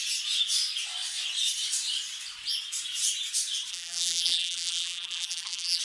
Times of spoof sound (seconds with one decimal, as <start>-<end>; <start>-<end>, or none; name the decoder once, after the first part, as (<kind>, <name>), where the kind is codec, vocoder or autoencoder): 3.7-5.8 (vocoder, BigVGAN v2)